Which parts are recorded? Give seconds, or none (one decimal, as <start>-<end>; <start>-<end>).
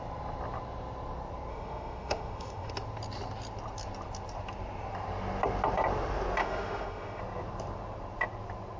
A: 0.0-1.5; 2.7-6.4; 7.2-8.8